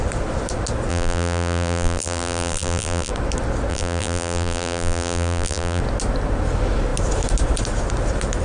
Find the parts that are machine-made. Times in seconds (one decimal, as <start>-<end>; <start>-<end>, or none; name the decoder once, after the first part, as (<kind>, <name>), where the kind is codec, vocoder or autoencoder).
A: 0.9-3.1 (vocoder, BigVGAN v2); 3.7-5.8